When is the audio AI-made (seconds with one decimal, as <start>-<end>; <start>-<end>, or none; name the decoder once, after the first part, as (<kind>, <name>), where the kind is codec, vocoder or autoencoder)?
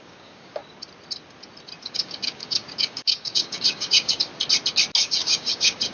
0.0-0.6 (codec, DAC); 1.8-4.3; 5.0-5.9